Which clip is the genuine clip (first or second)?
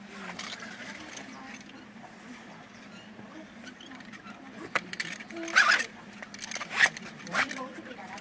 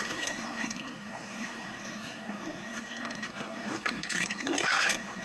first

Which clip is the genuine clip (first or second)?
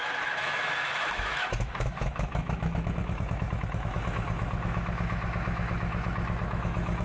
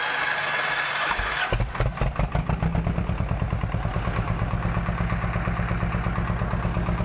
second